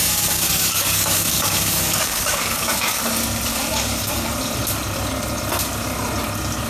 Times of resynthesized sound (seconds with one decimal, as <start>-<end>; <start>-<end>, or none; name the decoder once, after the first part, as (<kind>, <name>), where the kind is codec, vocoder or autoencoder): 0.0-3.0 (codec, DAC); 3.5-4.3